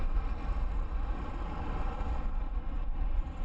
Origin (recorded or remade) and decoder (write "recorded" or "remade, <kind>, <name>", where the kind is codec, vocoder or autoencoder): recorded